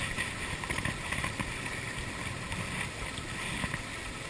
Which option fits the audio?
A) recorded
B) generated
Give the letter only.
A